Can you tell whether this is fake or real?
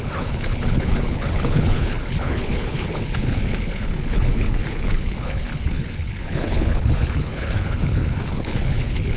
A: fake